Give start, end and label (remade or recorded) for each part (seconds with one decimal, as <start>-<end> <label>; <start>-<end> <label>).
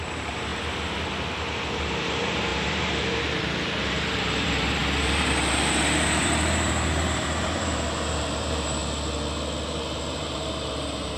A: 0.0-0.5 remade; 0.5-1.8 recorded; 1.8-8.8 remade; 8.8-10.1 recorded; 10.1-11.2 remade